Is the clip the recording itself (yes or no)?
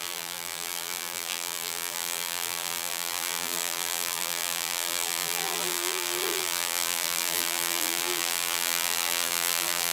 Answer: no